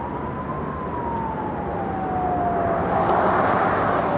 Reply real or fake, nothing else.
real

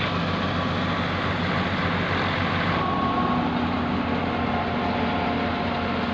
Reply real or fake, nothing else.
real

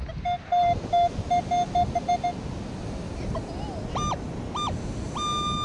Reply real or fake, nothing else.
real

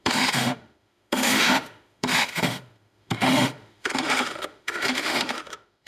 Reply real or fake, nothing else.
fake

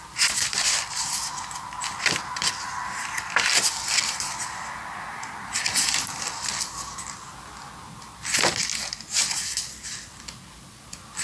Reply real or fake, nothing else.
real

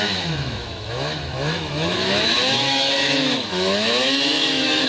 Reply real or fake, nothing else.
fake